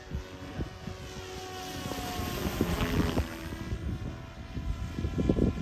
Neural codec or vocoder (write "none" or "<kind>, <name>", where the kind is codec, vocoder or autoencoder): none